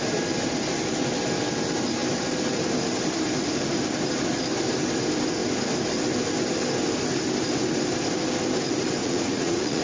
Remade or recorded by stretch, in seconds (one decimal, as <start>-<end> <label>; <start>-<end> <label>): 0.0-9.0 recorded; 9.0-9.8 remade